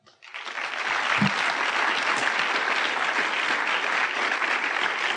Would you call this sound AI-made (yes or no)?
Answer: no